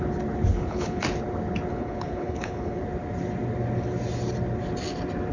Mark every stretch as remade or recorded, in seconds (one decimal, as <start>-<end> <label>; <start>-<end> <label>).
0.0-0.5 recorded; 0.5-1.0 remade; 1.0-1.7 recorded; 1.7-2.8 remade; 2.8-5.3 recorded